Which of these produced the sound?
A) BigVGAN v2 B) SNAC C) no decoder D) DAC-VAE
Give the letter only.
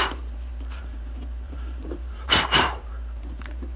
A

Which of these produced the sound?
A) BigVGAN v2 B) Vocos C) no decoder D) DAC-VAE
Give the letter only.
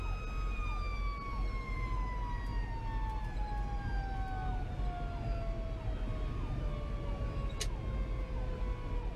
C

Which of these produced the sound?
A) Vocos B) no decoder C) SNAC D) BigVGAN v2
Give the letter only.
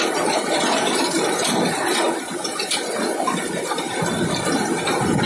D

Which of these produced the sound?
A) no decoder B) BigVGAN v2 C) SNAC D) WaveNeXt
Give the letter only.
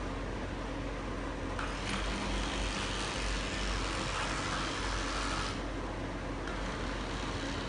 A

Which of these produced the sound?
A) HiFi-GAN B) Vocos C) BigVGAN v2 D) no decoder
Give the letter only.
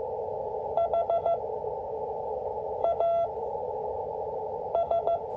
D